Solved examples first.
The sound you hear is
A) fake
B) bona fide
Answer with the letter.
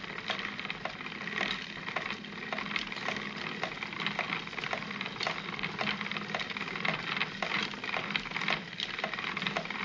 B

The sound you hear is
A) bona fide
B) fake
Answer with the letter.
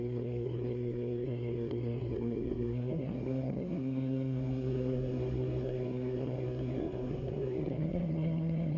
B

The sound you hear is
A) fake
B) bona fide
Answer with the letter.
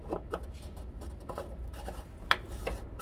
B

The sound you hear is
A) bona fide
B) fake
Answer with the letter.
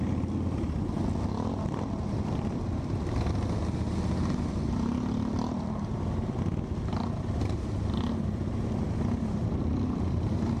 A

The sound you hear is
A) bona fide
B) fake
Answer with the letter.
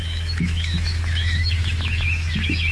B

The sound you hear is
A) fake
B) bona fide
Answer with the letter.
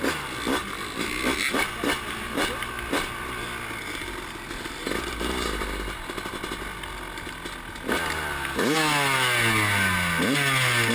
B